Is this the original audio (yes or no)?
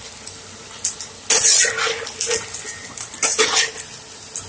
yes